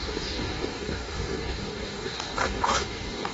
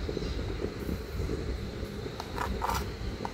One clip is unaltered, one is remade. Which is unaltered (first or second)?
second